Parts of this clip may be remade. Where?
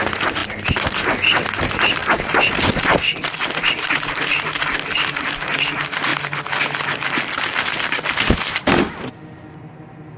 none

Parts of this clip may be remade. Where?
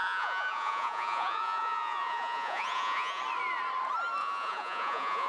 0.0-3.2 (vocoder, Vocos); 4.2-5.3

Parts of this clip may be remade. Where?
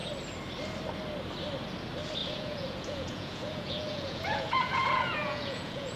2.2-6.0 (vocoder, Vocos)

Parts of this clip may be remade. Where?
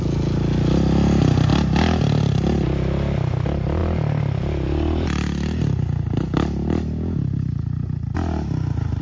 none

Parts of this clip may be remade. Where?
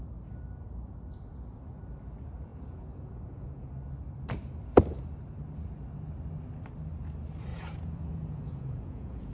2.5-3.7 (vocoder, Vocos); 7.5-9.3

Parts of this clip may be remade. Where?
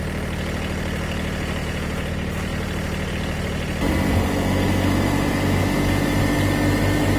1.6-2.1 (vocoder, Vocos)